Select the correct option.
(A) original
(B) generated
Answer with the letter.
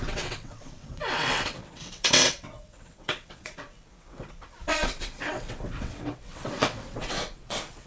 B